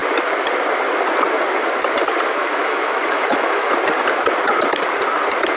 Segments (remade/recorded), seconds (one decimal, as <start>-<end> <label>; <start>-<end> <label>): 0.0-2.4 recorded; 2.4-3.7 remade; 3.7-5.6 recorded